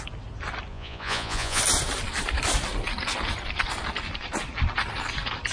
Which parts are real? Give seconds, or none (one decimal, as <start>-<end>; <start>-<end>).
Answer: 0.0-0.7; 1.6-5.5